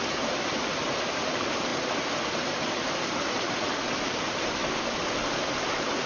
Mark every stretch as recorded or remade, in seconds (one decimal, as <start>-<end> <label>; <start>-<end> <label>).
0.0-1.7 remade; 1.7-2.5 recorded; 2.5-4.6 remade; 4.6-5.6 recorded; 5.6-6.1 remade